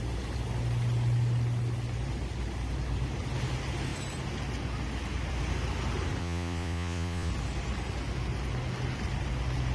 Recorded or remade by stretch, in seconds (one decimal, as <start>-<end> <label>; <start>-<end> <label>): 0.0-6.2 recorded; 6.2-7.3 remade; 7.3-9.7 recorded